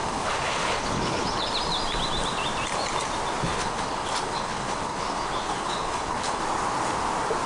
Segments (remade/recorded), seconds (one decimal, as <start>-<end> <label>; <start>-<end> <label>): 0.0-1.5 remade; 1.5-3.5 recorded; 3.5-6.4 remade; 6.4-7.5 recorded

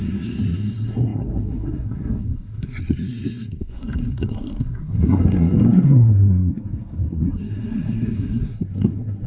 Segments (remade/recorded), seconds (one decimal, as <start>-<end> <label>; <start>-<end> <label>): 0.0-9.3 remade

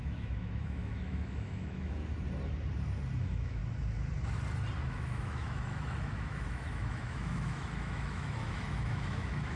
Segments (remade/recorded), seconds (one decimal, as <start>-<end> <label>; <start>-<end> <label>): 0.0-2.0 remade; 2.0-3.2 recorded; 3.2-3.6 remade; 3.6-4.8 recorded; 4.8-9.6 remade

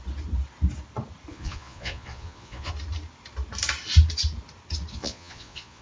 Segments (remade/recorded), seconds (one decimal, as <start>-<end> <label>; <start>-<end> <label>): 0.0-1.3 recorded; 1.3-2.7 remade; 2.7-4.9 recorded; 4.9-5.8 remade

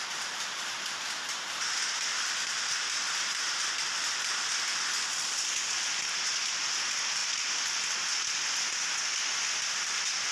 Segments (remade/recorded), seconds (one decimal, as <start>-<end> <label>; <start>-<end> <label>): 0.0-10.3 recorded

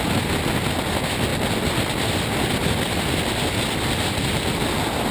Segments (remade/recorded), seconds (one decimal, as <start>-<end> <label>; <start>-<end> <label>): 0.0-5.1 recorded